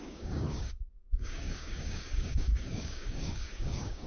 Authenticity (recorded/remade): remade